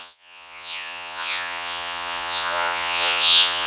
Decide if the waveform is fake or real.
fake